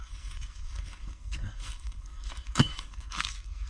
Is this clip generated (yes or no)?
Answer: yes